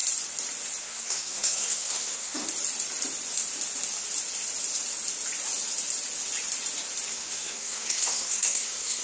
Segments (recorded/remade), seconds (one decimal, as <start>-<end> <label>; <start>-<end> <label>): 0.0-0.8 recorded; 0.8-2.4 remade; 2.4-7.1 recorded; 7.1-9.0 remade